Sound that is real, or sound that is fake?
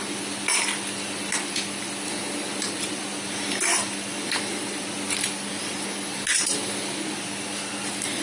real